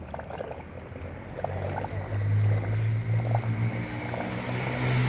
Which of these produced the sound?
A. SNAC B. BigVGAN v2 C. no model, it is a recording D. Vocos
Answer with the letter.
C